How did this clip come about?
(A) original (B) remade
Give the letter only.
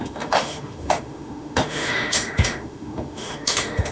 B